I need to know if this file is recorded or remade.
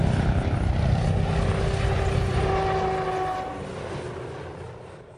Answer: recorded